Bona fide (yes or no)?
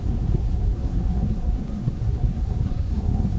no